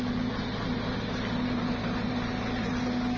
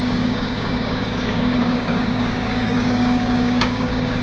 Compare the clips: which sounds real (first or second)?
first